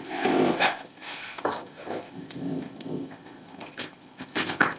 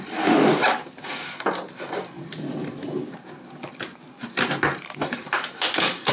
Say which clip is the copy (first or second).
first